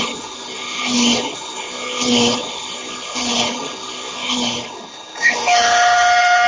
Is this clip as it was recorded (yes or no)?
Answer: no